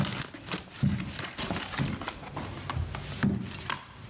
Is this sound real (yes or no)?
yes